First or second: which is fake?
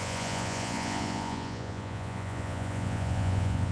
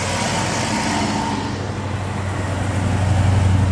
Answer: first